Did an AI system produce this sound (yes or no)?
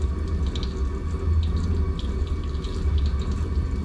no